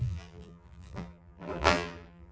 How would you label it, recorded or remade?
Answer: remade